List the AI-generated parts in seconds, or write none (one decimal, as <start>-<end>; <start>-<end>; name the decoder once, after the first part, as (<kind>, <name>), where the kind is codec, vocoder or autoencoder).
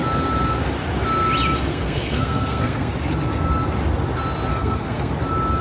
1.7-2.9 (codec, SNAC); 4.5-5.1